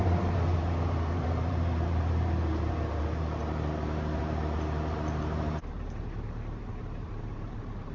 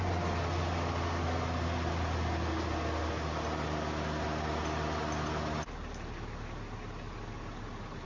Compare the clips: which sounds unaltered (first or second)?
second